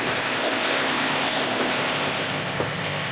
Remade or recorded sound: remade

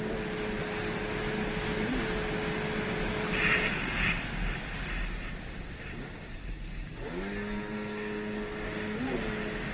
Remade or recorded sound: recorded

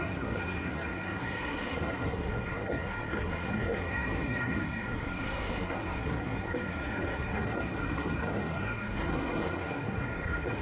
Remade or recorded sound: remade